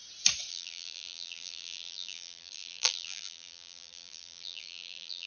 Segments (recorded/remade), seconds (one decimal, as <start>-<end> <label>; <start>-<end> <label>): 0.0-0.5 recorded; 0.5-5.3 remade